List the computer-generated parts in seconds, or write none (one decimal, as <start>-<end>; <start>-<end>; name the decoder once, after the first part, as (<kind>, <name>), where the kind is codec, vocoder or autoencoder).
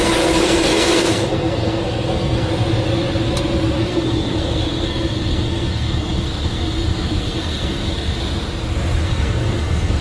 0.0-2.5 (codec, SNAC); 3.8-8.2; 9.0-10.0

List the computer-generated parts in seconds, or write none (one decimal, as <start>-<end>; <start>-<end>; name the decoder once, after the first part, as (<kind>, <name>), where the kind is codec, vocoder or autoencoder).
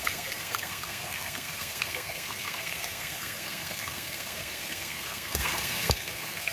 0.0-6.5 (codec, SNAC)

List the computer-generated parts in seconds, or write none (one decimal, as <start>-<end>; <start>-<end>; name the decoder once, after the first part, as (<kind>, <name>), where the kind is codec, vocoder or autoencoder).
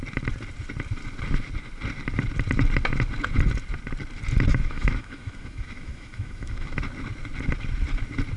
4.5-6.8 (autoencoder, DAC-VAE)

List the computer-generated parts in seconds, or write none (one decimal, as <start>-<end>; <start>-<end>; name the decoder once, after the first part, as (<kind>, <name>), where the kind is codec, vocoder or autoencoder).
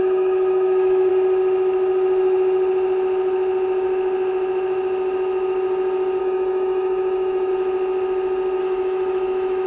0.0-1.1 (autoencoder, DAC-VAE); 6.2-7.5; 8.6-9.7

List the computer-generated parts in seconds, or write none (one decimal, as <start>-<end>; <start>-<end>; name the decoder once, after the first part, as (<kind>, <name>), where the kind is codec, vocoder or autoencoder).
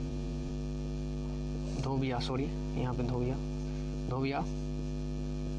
0.0-0.5 (vocoder, Vocos)